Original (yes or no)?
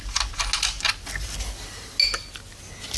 yes